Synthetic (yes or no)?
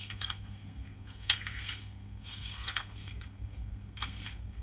yes